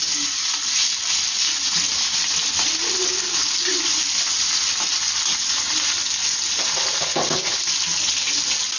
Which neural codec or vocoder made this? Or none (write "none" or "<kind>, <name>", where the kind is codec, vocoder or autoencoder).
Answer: none